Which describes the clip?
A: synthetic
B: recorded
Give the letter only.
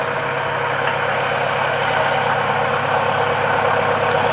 B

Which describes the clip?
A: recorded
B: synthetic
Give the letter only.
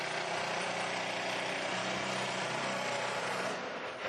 B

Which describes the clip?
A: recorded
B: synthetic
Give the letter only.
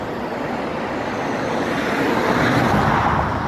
A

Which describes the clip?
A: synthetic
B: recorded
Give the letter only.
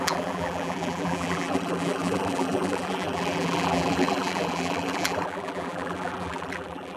A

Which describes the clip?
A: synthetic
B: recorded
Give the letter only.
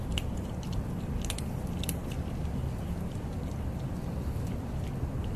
B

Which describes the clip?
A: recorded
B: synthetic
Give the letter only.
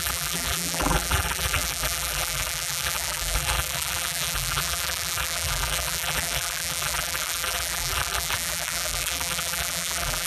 B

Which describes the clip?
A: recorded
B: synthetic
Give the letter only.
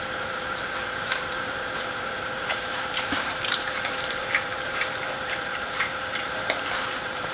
B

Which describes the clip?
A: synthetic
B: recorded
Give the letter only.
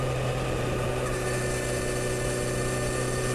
B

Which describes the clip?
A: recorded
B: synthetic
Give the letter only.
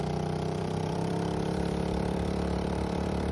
B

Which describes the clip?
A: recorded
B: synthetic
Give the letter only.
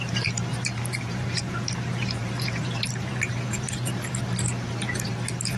B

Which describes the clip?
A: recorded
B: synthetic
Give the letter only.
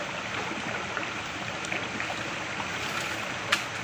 A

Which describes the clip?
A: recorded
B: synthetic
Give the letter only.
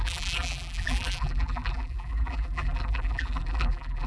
B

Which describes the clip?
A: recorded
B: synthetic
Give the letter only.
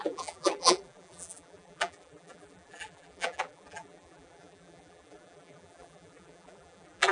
B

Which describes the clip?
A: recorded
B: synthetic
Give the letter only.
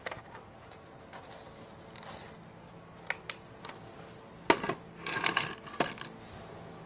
A